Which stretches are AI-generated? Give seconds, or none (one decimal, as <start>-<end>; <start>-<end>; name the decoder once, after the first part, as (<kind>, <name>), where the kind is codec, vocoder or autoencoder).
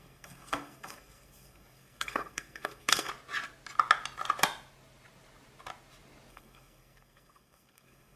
0.0-3.1 (codec, SNAC); 6.3-8.2